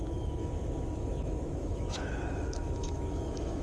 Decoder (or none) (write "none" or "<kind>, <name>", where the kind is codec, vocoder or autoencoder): autoencoder, DAC-VAE